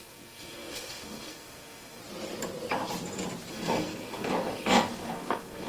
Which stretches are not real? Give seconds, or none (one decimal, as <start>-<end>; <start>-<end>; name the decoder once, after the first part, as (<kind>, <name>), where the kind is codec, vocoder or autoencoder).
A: 0.0-2.0 (codec, SNAC); 3.5-5.7